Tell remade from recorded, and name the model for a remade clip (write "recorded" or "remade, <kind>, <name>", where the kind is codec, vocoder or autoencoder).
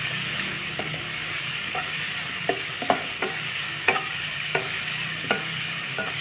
remade, codec, DAC